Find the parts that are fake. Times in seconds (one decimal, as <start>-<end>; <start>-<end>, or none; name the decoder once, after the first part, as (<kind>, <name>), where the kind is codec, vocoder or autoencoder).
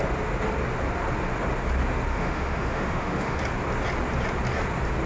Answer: 2.1-3.4 (autoencoder, DAC-VAE)